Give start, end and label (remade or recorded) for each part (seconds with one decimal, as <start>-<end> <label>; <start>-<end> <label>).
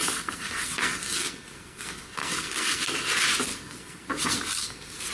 0.0-3.1 remade; 3.1-3.5 recorded; 3.5-5.1 remade